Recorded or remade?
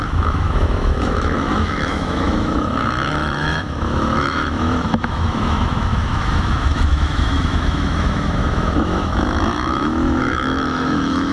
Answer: remade